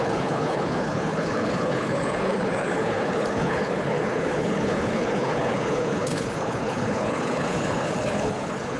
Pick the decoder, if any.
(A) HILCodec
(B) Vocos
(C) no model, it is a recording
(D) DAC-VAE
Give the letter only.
A